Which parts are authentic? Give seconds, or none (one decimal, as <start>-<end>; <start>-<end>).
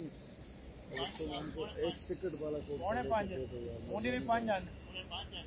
0.0-5.5